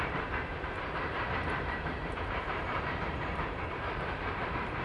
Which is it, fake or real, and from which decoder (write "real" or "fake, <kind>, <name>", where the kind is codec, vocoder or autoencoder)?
fake, vocoder, BigVGAN v2